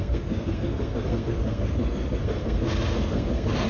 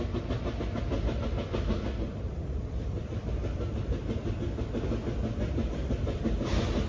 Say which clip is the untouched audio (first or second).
second